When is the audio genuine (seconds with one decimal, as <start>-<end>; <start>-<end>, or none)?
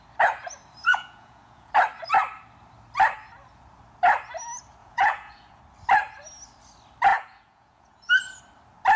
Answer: 0.0-0.9; 1.7-4.8; 5.6-7.1; 8.1-9.0